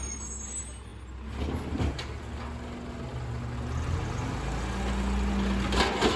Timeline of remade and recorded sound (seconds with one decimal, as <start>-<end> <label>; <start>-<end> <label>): 0.0-6.2 recorded